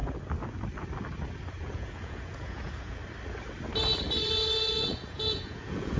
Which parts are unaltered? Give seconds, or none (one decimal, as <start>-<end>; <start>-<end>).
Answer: 0.0-1.5; 3.0-4.7